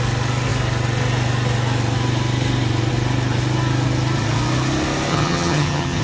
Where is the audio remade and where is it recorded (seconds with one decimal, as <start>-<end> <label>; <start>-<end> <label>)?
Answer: 0.0-5.1 recorded; 5.1-6.0 remade